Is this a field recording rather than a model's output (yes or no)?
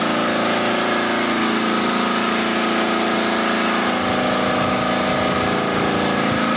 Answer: yes